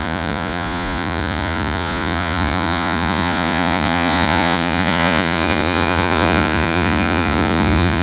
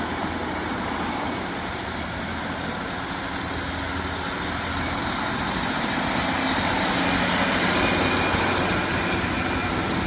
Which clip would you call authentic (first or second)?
second